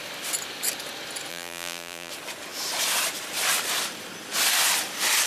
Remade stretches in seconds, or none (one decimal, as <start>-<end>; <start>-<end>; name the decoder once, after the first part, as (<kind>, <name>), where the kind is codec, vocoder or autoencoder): 1.3-2.1 (vocoder, BigVGAN v2)